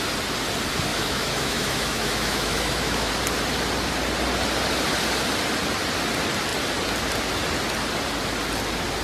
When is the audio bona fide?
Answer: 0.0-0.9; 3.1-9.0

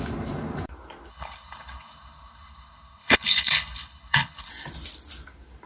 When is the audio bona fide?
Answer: 0.0-1.1; 4.5-5.7

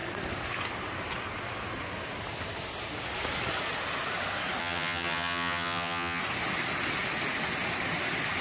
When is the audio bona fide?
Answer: 0.0-4.6; 6.2-8.4

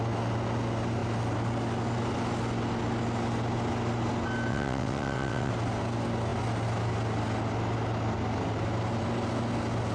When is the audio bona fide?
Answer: 0.0-4.5; 5.5-9.9